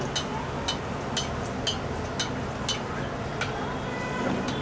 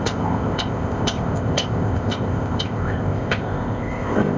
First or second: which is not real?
second